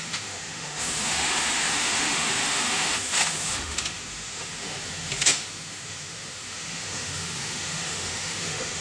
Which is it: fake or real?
fake